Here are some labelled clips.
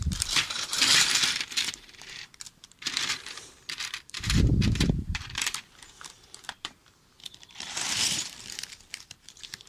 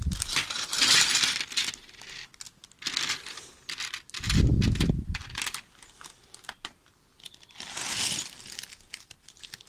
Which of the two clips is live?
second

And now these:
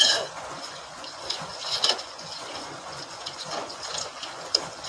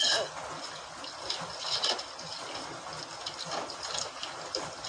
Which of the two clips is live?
second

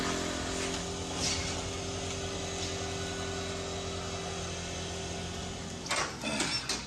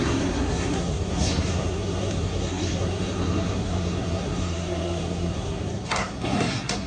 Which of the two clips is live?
first